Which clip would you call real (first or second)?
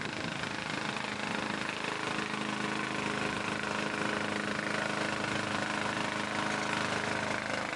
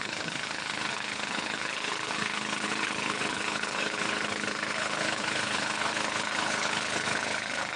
first